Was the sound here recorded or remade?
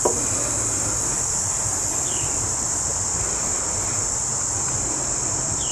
recorded